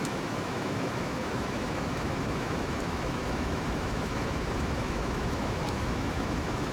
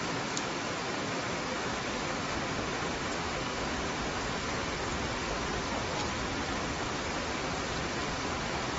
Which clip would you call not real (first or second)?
first